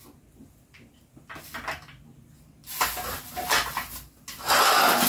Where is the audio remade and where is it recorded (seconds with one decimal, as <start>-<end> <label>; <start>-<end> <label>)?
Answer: 0.0-5.1 recorded